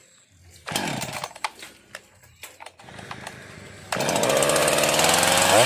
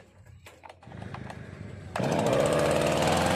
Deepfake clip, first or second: second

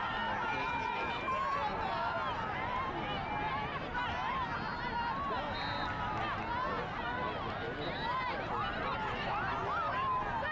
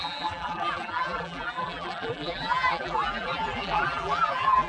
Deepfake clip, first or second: second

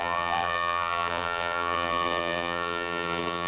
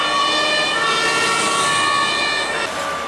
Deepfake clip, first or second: first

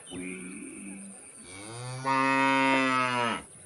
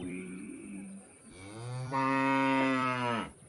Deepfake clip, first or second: second